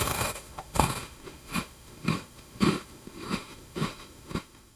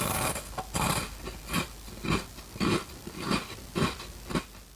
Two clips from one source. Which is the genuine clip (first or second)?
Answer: second